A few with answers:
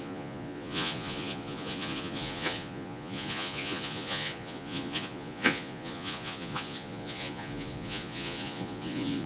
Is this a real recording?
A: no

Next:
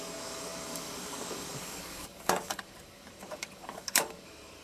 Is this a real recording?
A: no